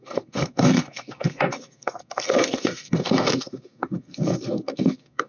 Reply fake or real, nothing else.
fake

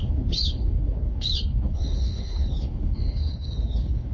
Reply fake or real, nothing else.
fake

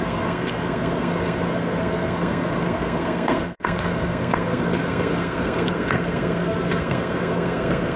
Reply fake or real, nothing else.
fake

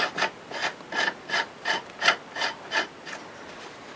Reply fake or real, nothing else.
real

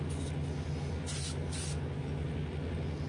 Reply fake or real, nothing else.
real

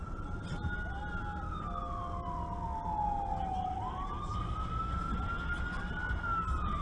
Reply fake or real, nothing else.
real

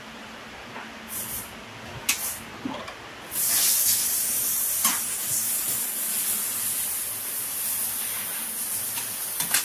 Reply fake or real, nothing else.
real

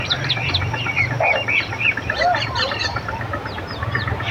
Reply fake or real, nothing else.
fake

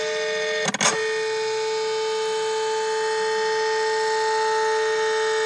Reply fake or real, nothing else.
real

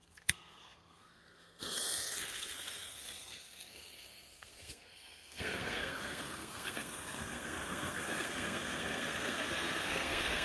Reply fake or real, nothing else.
fake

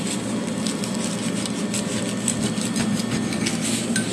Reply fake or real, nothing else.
real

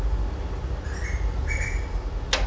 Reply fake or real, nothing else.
real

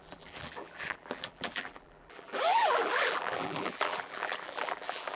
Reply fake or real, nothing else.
fake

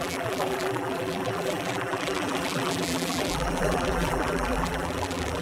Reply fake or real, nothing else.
fake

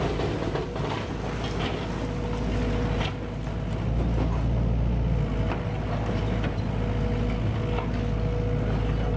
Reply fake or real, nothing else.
real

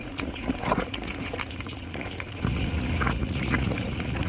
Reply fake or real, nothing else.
fake